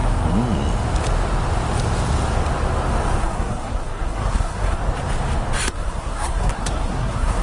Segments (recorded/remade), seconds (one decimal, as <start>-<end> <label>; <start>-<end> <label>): 0.0-3.2 recorded; 3.2-4.8 remade; 4.8-5.7 recorded; 5.7-7.4 remade